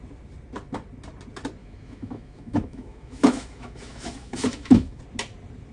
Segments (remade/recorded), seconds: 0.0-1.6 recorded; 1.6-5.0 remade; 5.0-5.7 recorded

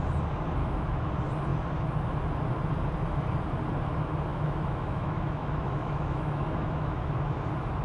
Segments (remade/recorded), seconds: 0.0-0.6 recorded; 0.6-1.1 remade; 1.1-4.3 recorded; 4.3-7.1 remade; 7.1-7.8 recorded

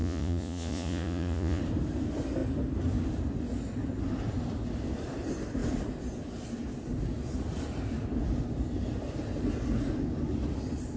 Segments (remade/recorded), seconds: 0.0-1.6 remade; 1.6-11.0 recorded

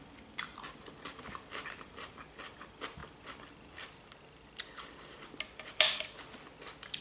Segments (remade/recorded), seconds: 0.0-7.0 recorded

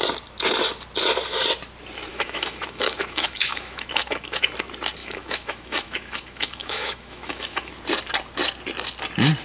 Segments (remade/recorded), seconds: 0.0-2.1 recorded; 2.1-4.4 remade; 4.4-5.0 recorded; 5.0-7.7 remade; 7.7-9.4 recorded

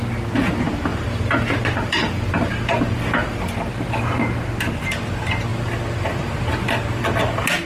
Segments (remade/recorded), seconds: 0.0-0.9 recorded; 0.9-2.6 remade; 2.6-3.2 recorded; 3.2-4.0 remade; 4.0-5.5 recorded; 5.5-7.0 remade; 7.0-7.7 recorded